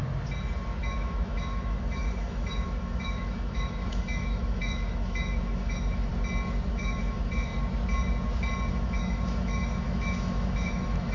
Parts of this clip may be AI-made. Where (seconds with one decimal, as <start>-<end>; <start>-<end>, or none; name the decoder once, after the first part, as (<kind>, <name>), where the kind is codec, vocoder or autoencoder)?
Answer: 0.8-6.1 (autoencoder, DAC-VAE); 6.7-7.5; 8.7-11.1

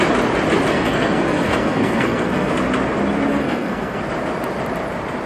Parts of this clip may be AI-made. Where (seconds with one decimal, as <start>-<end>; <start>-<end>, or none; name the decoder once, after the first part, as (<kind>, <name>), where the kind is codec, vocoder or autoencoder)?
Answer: 0.7-2.5 (codec, SNAC); 3.3-4.0